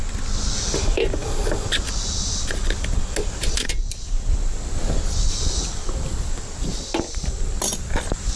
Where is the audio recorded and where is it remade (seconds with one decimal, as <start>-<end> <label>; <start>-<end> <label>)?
0.0-8.4 recorded